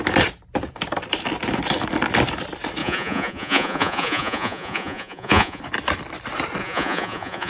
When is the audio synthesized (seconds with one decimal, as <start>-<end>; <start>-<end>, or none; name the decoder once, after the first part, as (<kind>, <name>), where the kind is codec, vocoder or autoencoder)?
2.8-5.6 (vocoder, Vocos); 6.6-7.5